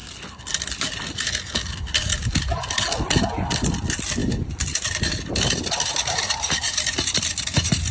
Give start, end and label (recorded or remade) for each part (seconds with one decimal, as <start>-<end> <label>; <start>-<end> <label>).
0.0-4.2 recorded; 4.2-7.9 remade